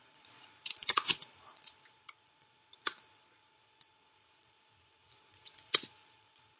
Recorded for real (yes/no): no